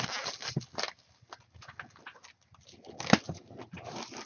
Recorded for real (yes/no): yes